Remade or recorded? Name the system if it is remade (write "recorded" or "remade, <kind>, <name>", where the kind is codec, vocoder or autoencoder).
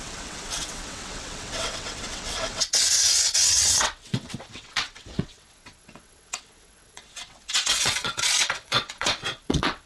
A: remade, vocoder, WaveNeXt